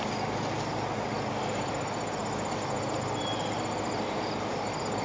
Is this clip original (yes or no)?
yes